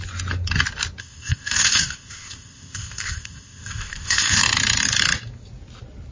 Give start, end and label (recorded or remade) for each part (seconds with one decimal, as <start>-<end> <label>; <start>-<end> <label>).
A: 0.0-1.0 recorded; 1.0-4.4 remade; 4.4-6.1 recorded